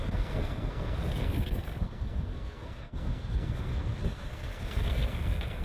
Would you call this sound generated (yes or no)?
yes